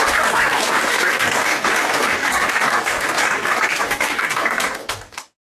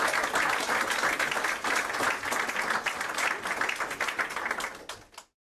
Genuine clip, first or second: second